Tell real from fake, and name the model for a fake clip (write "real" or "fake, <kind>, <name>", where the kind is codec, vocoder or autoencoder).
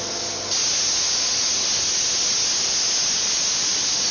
real